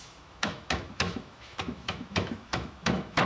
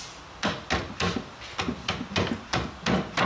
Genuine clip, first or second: second